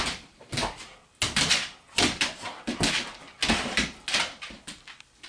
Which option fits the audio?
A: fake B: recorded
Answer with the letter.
B